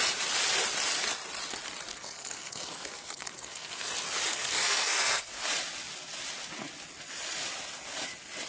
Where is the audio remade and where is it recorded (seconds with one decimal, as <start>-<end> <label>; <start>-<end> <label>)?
0.0-1.9 recorded; 1.9-3.9 remade; 3.9-4.3 recorded; 4.3-5.3 remade; 5.3-8.5 recorded